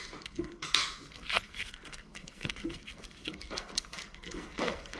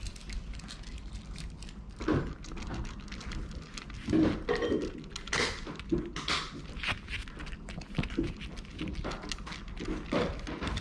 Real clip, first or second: second